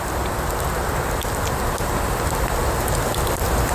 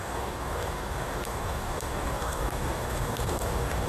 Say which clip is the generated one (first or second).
second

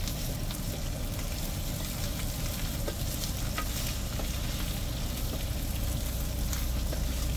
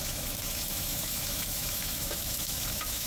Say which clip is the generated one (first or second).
second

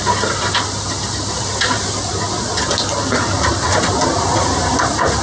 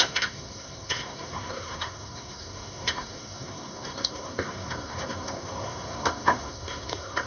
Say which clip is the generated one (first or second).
second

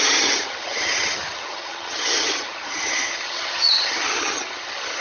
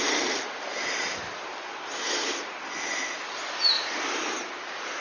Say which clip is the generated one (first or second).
first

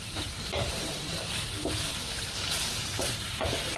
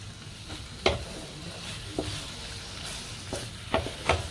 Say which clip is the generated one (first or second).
first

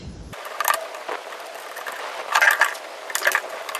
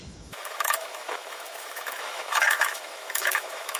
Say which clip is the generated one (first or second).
second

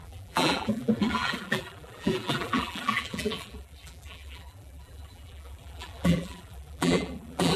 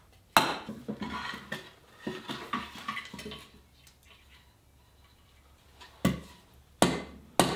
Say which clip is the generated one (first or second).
first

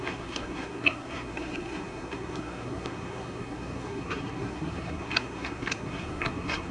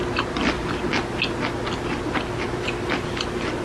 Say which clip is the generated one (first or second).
first